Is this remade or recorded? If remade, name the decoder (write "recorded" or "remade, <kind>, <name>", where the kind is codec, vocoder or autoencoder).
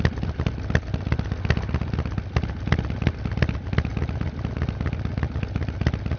recorded